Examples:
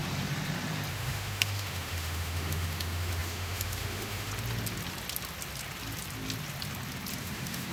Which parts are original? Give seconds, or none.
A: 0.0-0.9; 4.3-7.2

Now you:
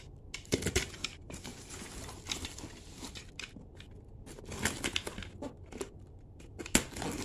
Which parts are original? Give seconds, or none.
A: 0.0-7.2

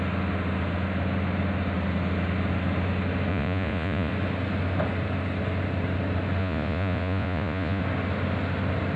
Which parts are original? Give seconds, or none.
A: 0.0-3.3; 4.1-6.4; 7.8-9.0

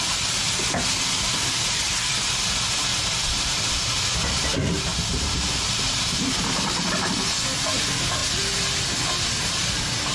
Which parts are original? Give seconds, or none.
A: 0.0-2.9; 6.9-10.1

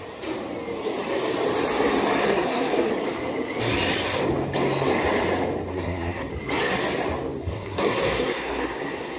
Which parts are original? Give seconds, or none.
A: 0.0-2.2; 2.9-5.7; 6.3-7.4

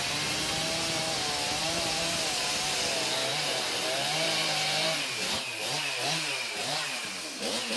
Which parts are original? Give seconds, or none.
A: 0.0-1.6; 2.2-3.3; 7.2-7.8